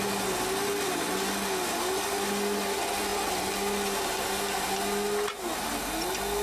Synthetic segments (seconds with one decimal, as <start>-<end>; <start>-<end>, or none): none